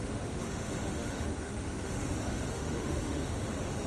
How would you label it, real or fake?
fake